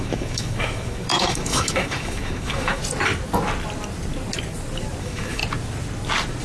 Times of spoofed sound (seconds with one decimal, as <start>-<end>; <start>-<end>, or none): 0.0-2.8; 5.0-5.4